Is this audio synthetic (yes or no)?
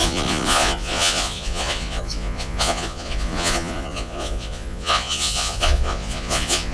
yes